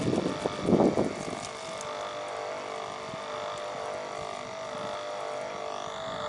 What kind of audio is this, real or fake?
real